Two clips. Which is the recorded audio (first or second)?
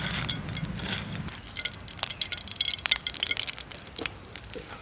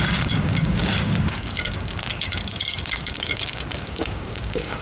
first